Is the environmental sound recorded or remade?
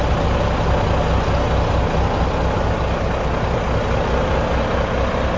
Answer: recorded